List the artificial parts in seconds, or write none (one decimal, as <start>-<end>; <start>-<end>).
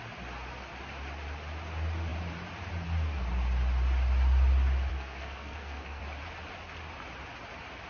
4.9-6.0